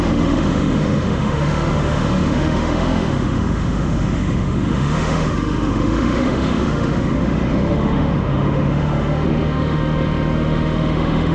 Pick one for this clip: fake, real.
fake